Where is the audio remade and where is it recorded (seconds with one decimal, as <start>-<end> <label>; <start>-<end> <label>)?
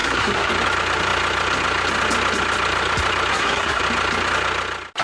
0.0-0.5 remade; 0.5-3.3 recorded; 3.3-3.8 remade; 3.8-5.0 recorded